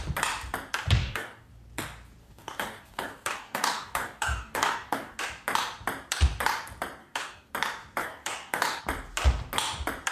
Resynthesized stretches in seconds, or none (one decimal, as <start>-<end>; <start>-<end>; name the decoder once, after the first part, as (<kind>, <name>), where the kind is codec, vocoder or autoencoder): 1.0-1.5 (codec, DAC); 2.2-5.2; 7.0-7.5; 8.0-8.8